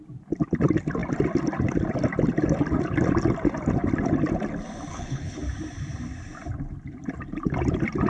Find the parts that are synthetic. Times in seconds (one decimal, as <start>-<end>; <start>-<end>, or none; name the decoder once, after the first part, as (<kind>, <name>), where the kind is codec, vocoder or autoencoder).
4.9-5.4 (codec, HILCodec)